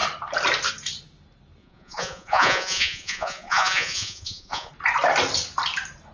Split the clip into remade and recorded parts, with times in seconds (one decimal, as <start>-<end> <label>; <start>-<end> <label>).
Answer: 0.0-1.6 recorded; 1.6-4.7 remade; 4.7-6.1 recorded